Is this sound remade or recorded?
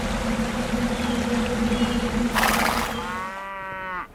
recorded